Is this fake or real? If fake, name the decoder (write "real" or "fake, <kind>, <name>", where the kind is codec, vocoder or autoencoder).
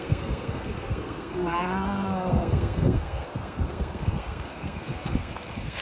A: fake, codec, SNAC